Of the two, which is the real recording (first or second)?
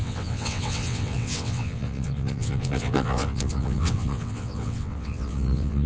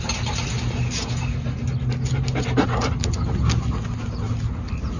second